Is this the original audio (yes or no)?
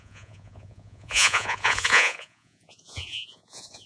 no